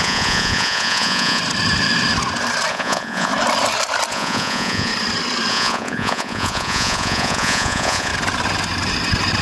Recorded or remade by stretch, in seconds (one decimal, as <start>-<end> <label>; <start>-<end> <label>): 0.0-1.4 remade; 1.4-2.7 recorded; 2.7-3.3 remade; 3.3-4.1 recorded; 4.1-4.9 remade; 4.9-5.5 recorded; 5.5-8.1 remade; 8.1-9.4 recorded